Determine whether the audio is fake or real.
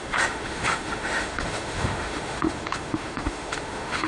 fake